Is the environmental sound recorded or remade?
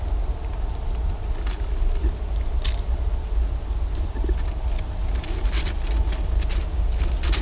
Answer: recorded